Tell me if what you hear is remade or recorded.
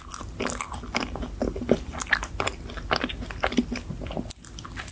recorded